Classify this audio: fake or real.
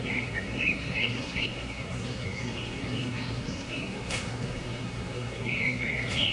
fake